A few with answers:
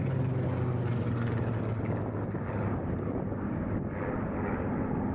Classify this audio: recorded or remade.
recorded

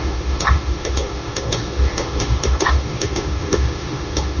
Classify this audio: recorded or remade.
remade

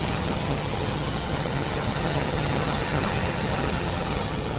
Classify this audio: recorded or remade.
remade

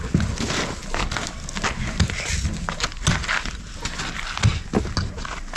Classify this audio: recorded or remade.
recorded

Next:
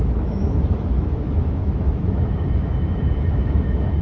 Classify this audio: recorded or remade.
remade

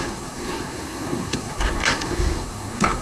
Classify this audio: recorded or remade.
remade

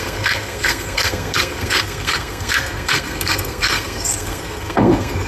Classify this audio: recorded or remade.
remade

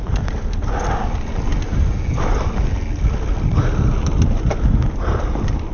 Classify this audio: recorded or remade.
recorded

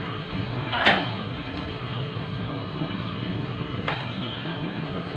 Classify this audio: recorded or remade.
remade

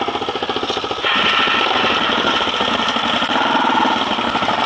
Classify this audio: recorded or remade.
recorded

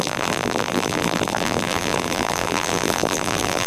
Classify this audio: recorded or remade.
remade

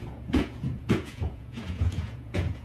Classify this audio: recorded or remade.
remade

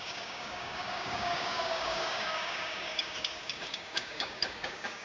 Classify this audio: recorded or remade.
remade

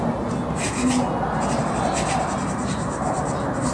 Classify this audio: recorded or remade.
recorded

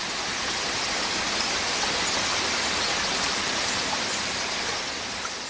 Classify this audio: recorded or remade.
recorded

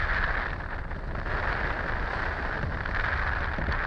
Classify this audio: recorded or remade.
recorded